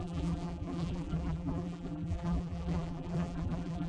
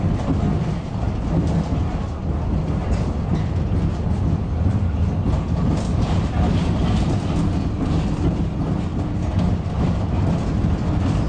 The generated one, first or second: first